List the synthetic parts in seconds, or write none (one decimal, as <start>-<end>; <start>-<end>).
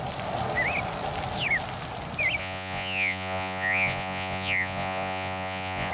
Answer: 2.4-5.9